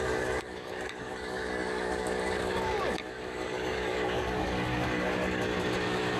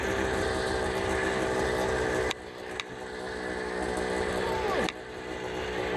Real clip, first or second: second